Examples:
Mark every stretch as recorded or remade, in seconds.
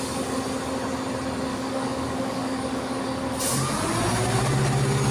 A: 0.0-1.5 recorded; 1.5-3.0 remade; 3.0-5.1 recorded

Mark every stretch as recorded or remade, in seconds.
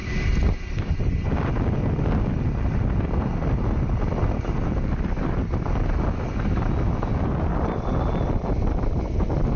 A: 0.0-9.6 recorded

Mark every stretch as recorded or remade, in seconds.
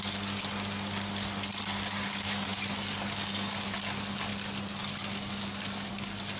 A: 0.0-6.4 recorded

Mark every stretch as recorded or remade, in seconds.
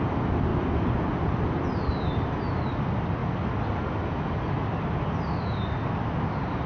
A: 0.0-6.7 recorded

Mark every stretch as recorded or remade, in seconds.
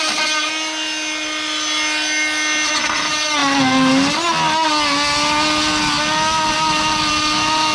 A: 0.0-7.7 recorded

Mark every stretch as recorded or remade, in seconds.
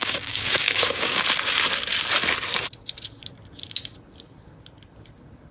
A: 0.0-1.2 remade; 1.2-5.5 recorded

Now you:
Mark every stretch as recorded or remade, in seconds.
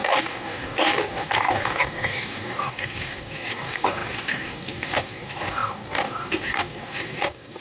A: 0.0-7.6 remade